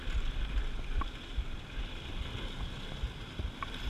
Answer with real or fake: real